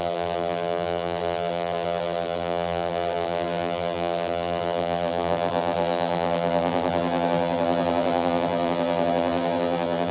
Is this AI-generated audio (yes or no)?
yes